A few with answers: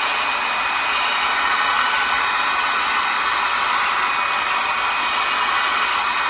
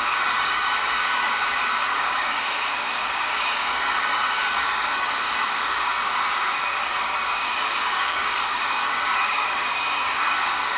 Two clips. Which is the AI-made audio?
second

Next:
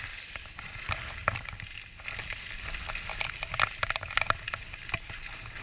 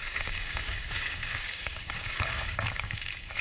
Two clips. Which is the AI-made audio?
second